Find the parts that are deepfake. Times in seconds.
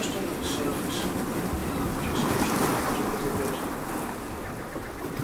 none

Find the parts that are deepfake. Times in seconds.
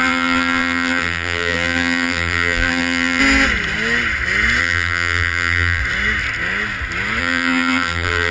0.0-3.2 (vocoder, BigVGAN v2); 4.6-5.8; 7.2-8.3